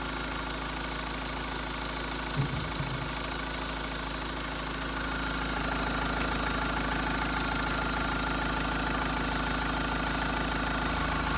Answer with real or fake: real